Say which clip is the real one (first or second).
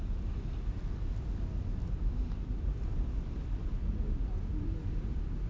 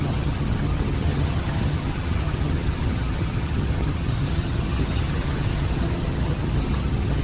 first